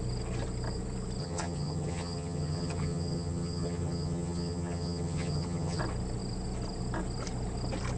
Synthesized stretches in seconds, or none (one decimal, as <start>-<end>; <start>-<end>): 1.2-5.8